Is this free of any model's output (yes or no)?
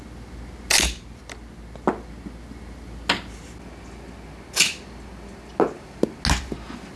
yes